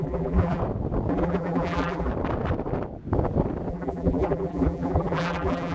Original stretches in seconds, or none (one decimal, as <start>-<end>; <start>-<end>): 0.6-1.1; 2.1-3.7